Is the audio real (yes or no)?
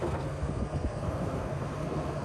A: no